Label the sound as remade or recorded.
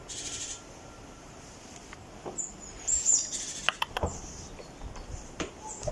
recorded